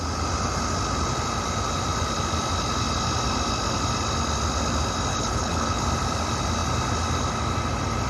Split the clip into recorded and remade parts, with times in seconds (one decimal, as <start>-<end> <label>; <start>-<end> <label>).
0.0-5.1 recorded; 5.1-5.8 remade; 5.8-8.1 recorded